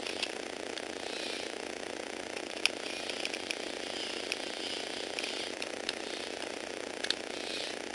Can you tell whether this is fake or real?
real